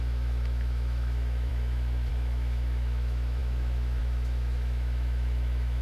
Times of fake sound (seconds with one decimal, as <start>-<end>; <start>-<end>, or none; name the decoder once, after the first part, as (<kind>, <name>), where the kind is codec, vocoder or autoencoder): 0.0-5.8 (autoencoder, DAC-VAE)